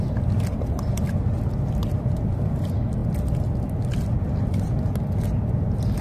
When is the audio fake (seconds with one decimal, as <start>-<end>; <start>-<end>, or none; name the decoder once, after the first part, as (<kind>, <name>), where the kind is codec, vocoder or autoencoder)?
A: none